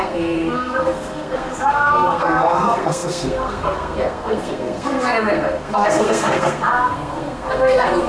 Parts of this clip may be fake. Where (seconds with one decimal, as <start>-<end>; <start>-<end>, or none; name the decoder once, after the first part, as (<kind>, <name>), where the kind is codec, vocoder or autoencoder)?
0.0-8.1 (codec, SNAC)